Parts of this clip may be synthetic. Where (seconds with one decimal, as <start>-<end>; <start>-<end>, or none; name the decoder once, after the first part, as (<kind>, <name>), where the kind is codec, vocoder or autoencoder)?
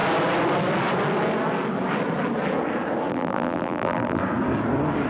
3.1-4.2 (vocoder, BigVGAN v2)